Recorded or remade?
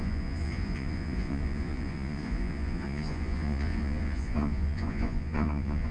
remade